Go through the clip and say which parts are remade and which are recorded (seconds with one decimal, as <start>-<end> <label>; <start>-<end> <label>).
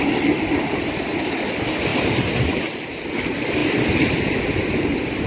0.0-1.9 recorded; 1.9-2.6 remade; 2.6-5.3 recorded